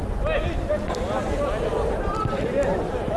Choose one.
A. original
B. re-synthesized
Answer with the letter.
A